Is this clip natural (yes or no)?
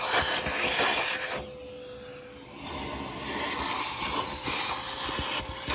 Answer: yes